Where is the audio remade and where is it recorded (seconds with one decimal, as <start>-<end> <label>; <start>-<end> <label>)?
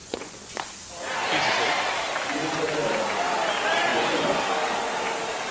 0.0-0.7 remade; 0.7-3.9 recorded; 3.9-4.4 remade; 4.4-5.5 recorded